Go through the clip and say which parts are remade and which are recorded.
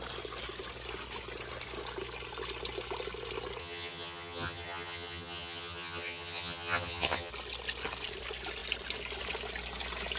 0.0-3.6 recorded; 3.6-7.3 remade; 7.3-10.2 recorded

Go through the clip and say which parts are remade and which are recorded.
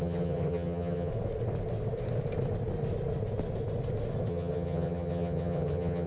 0.0-1.1 remade; 1.1-4.3 recorded; 4.3-6.1 remade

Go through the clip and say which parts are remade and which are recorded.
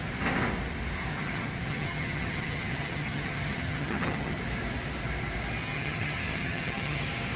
0.0-1.1 recorded; 1.1-4.4 remade; 4.4-5.6 recorded; 5.6-7.0 remade; 7.0-7.4 recorded